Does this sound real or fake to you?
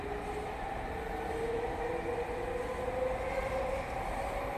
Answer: real